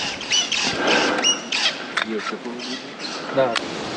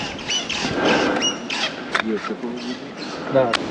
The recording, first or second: second